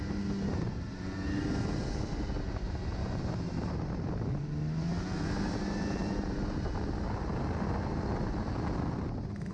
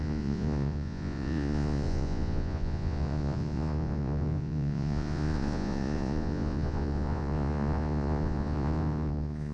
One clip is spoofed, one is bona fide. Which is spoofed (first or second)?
second